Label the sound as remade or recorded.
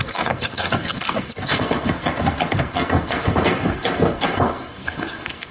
remade